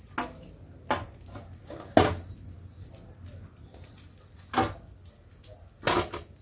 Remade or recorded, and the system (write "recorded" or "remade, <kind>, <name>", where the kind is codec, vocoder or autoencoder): recorded